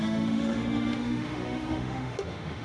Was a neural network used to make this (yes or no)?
yes